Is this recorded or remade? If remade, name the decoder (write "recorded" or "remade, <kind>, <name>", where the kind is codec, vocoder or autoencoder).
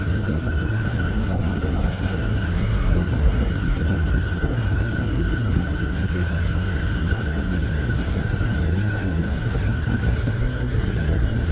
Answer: remade, codec, SNAC